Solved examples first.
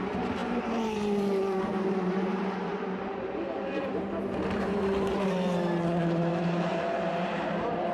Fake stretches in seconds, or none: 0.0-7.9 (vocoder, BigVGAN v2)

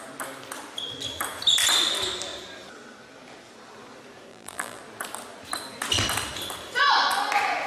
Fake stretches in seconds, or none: 4.3-4.8 (vocoder, BigVGAN v2)